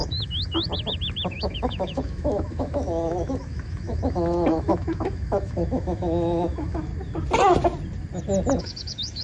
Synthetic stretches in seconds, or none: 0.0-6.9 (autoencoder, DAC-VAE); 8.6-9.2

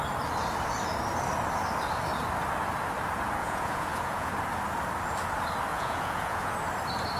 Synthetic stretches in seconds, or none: 3.4-4.3 (vocoder, Vocos); 5.7-6.5

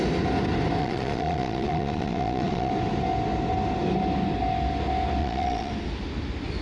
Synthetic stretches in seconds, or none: 0.8-2.7 (vocoder, Vocos); 5.2-5.7

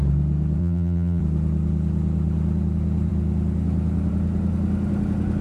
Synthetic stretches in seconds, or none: 0.6-1.2 (vocoder, BigVGAN v2)

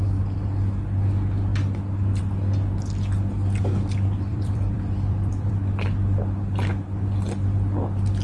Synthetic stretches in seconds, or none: 4.3-5.5 (vocoder, BigVGAN v2)

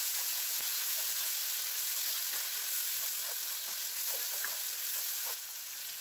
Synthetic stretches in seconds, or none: 0.0-1.4 (vocoder, Vocos); 5.0-6.0

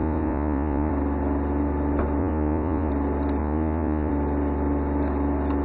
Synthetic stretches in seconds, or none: 0.0-0.9 (vocoder, Vocos); 2.2-2.9; 3.4-4.1

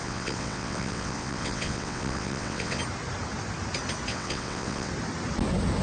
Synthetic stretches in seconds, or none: 0.0-2.8 (vocoder, WaveNeXt); 4.1-4.9